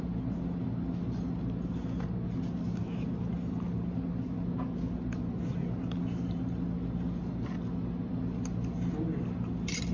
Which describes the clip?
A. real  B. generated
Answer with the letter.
A